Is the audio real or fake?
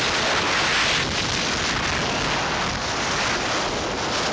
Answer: real